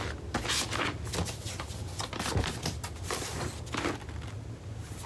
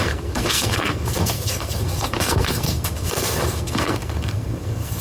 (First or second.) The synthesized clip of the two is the second